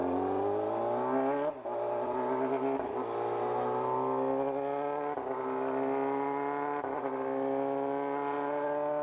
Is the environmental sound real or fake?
real